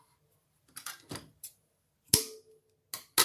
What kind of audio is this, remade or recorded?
recorded